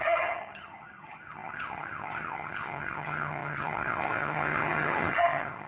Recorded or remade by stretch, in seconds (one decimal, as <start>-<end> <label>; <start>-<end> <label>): 0.0-5.7 remade

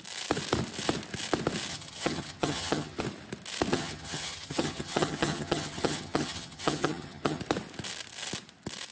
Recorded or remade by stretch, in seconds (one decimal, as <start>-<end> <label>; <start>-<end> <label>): 0.0-1.7 recorded; 1.7-3.0 remade; 3.0-3.7 recorded; 3.7-7.4 remade; 7.4-8.9 recorded

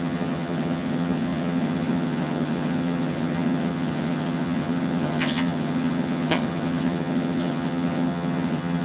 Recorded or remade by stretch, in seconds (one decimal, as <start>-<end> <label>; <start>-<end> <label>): 0.0-8.8 remade

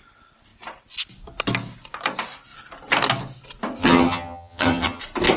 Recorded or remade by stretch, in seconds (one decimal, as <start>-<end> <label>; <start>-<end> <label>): 0.0-3.8 recorded; 3.8-5.0 remade; 5.0-5.4 recorded

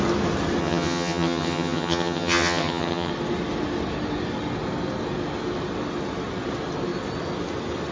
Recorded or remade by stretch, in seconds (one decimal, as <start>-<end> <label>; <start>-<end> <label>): 0.0-0.6 recorded; 0.6-3.1 remade; 3.1-7.9 recorded